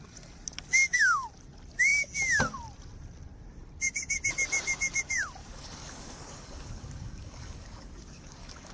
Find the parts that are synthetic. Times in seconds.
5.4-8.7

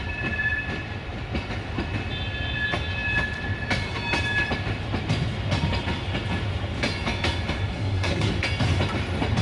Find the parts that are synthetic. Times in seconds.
7.7-8.3